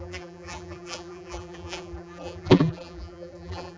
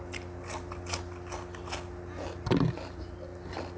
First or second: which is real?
second